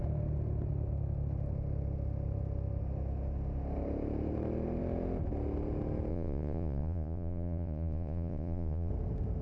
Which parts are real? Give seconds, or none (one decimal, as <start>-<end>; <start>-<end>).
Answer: 0.0-6.1; 8.9-9.4